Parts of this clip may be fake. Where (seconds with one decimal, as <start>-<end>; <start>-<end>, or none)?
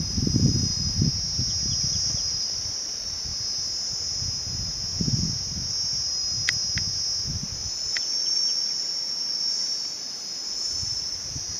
0.0-1.1; 1.8-3.3; 7.3-11.6